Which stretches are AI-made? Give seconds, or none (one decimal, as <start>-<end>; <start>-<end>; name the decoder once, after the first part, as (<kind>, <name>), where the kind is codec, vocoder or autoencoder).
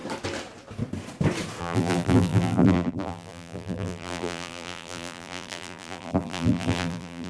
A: 1.6-7.3 (vocoder, BigVGAN v2)